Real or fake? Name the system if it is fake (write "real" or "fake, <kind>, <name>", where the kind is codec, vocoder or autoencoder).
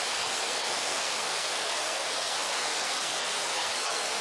fake, codec, SNAC